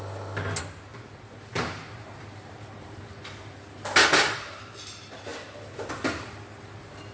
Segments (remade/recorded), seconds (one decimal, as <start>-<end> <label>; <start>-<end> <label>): 0.0-7.1 recorded